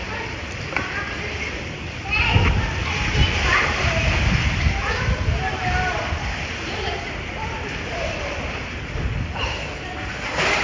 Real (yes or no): yes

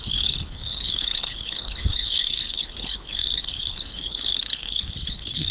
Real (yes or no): no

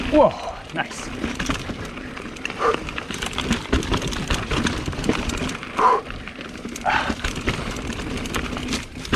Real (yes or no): no